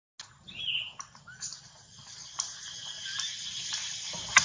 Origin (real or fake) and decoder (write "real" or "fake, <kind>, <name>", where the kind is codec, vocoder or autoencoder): real